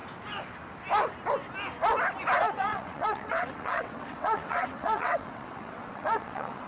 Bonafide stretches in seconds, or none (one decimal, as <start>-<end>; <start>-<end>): 0.0-2.6